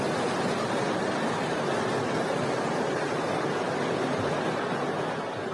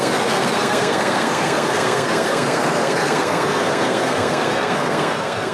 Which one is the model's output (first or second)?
second